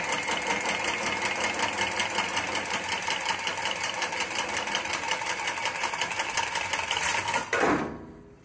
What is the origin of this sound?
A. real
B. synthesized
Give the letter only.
A